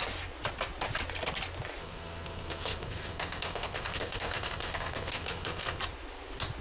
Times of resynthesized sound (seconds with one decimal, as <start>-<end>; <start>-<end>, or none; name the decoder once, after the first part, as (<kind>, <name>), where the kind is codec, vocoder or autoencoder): 1.8-5.8 (codec, SNAC)